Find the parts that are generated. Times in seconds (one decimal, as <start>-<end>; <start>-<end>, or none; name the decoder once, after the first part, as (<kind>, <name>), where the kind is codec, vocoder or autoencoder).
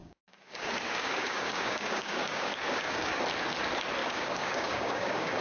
0.0-3.2 (codec, DAC); 4.0-5.4